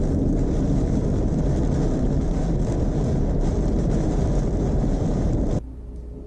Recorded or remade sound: recorded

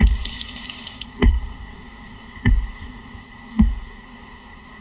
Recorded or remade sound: remade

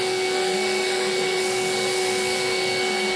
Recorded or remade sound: remade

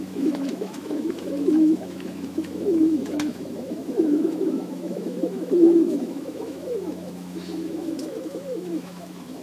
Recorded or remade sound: remade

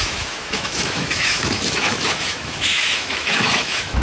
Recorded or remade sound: remade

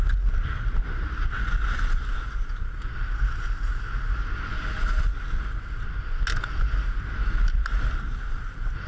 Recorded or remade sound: recorded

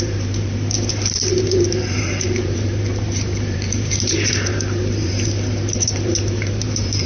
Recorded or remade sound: remade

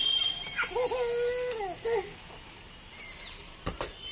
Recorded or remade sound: recorded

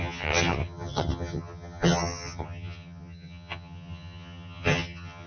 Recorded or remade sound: remade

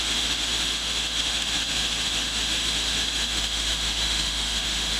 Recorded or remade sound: remade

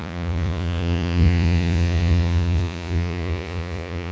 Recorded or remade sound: remade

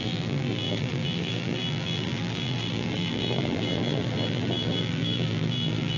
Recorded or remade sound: remade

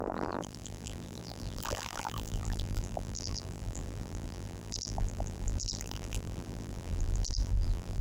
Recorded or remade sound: remade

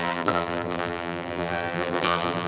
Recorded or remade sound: remade